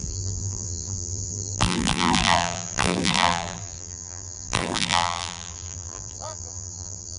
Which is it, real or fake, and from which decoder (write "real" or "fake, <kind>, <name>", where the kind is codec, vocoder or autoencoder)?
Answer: fake, vocoder, BigVGAN v2